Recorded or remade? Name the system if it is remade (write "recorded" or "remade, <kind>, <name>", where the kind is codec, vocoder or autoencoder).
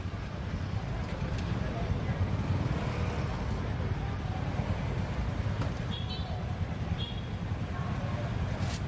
recorded